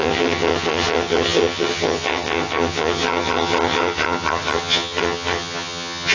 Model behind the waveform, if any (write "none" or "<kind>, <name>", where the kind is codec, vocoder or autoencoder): vocoder, HiFi-GAN